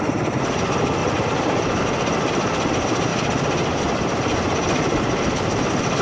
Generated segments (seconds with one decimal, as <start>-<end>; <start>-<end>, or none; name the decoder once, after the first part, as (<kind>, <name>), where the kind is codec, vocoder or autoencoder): none